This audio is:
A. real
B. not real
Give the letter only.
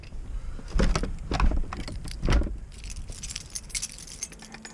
A